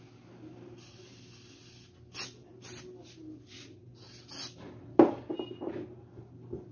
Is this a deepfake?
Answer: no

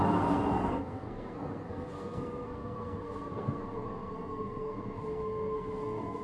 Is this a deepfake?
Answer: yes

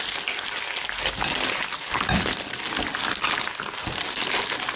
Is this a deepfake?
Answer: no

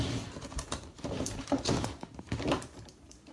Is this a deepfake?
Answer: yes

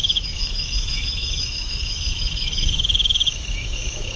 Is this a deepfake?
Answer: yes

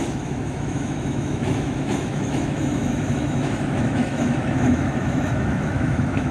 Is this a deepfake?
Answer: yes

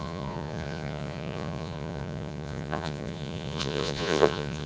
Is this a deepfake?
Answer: yes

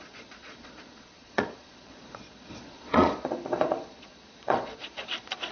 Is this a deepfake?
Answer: yes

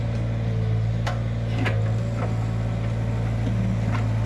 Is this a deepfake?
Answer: no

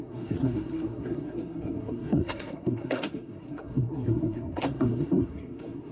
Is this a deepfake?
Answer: yes